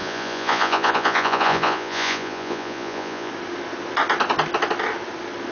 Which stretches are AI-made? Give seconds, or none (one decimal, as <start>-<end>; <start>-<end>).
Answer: 0.0-3.3